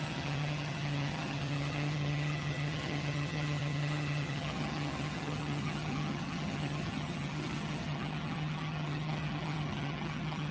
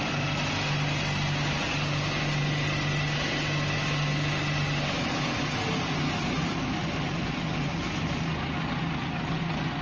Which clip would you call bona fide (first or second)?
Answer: second